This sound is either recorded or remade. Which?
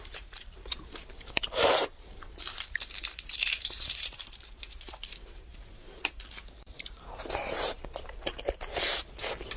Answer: remade